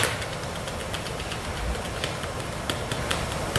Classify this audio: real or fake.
real